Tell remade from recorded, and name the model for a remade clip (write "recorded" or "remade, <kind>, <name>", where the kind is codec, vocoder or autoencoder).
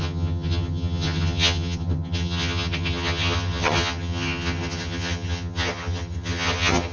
remade, vocoder, HiFi-GAN